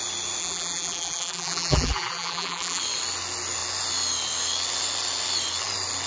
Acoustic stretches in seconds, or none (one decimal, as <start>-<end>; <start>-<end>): 0.0-0.4; 2.8-6.1